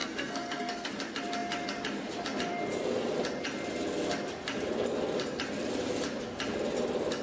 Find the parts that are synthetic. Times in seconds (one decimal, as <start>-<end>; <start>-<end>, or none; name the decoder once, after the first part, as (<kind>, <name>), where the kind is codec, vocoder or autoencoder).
0.0-0.9 (codec, SNAC)